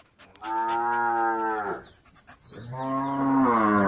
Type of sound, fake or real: real